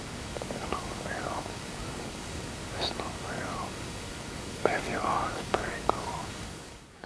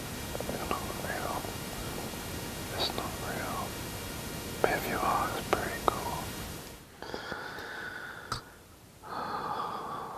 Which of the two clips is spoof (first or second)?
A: first